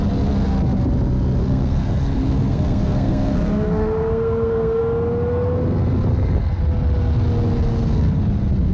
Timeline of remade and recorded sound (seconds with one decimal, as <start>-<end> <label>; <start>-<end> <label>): 0.0-1.4 recorded; 1.4-4.8 remade; 4.8-6.1 recorded; 6.1-6.6 remade; 6.6-7.7 recorded; 7.7-8.2 remade; 8.2-8.7 recorded